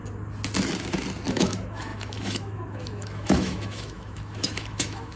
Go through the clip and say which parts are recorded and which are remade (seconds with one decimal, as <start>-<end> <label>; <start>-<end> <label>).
0.0-1.3 recorded; 1.3-5.2 remade